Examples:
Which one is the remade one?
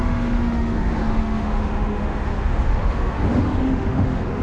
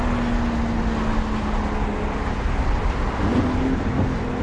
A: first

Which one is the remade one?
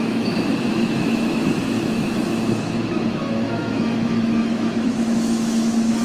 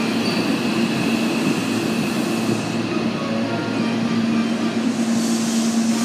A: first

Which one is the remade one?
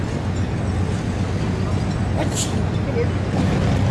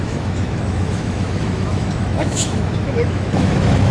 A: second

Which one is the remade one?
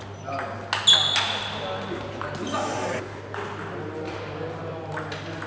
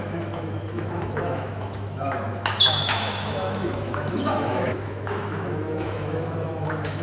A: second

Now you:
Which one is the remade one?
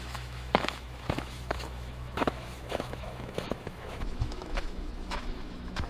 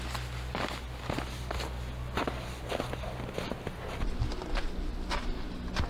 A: first